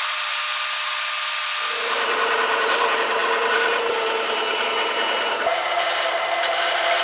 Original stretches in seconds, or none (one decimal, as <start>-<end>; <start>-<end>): 0.5-1.8